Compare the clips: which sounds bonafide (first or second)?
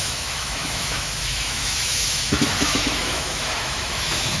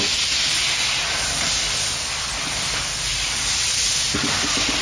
second